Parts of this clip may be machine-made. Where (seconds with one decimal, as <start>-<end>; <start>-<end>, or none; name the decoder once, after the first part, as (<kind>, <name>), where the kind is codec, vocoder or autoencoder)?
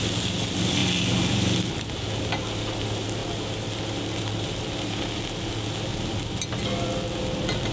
none